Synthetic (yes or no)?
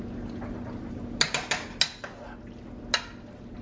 no